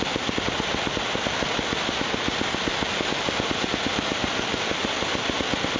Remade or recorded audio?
recorded